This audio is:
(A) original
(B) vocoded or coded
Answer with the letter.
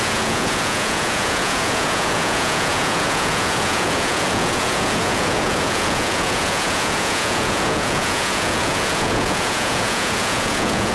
B